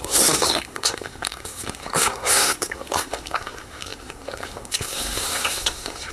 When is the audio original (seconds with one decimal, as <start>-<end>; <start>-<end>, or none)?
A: none